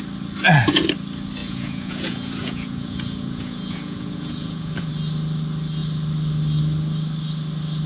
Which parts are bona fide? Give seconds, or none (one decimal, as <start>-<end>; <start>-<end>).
0.0-1.4; 4.9-7.9